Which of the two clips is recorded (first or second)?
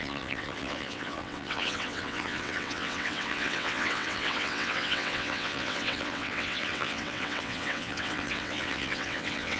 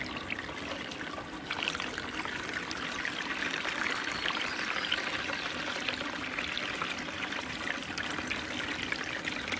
second